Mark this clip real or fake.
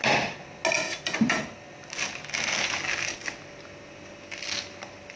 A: real